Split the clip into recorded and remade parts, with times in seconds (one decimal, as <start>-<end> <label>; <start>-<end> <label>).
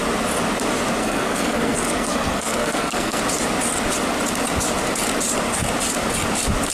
0.0-1.0 recorded; 1.0-3.2 remade; 3.2-6.7 recorded